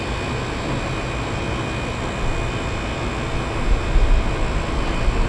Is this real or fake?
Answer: real